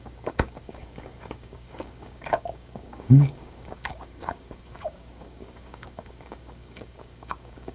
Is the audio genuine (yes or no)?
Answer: no